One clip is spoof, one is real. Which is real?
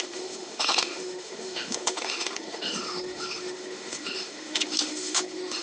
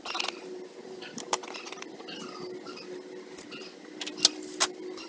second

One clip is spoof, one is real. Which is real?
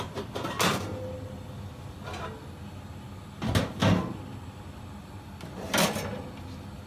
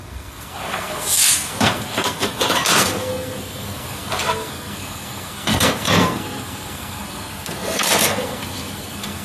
first